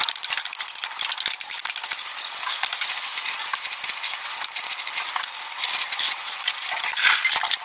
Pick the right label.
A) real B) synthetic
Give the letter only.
A